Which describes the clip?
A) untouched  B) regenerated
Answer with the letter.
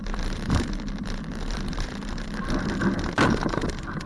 B